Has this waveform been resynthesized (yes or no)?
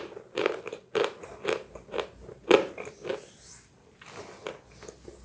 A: no